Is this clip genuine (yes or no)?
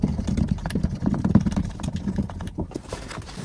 yes